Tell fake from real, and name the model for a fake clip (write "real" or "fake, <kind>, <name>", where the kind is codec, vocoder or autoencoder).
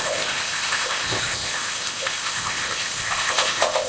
fake, codec, ZipCodec